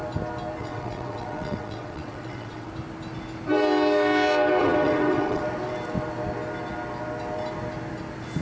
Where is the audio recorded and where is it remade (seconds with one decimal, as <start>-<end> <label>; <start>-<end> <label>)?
0.0-0.6 recorded; 0.6-2.7 remade; 2.7-4.6 recorded; 4.6-5.4 remade; 5.4-8.4 recorded